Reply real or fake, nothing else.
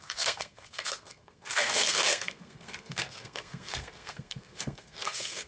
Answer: fake